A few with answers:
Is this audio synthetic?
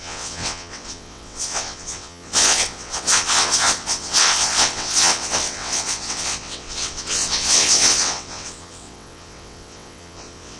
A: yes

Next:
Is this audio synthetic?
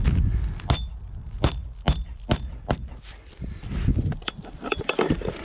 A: no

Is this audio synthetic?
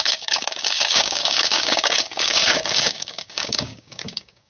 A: yes